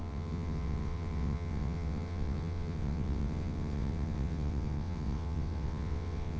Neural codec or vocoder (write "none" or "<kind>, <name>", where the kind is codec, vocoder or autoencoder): vocoder, WaveNeXt